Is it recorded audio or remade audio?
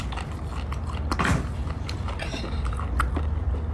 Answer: recorded